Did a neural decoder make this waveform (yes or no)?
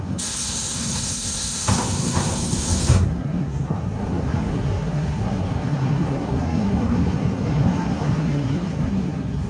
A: yes